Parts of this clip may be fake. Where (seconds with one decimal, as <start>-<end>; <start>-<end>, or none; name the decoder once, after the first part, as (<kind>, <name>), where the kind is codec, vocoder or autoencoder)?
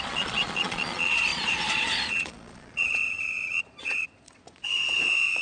0.0-5.4 (vocoder, Vocos)